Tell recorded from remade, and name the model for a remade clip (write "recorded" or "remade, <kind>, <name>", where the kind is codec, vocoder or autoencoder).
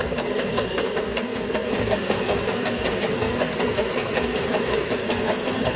remade, codec, SNAC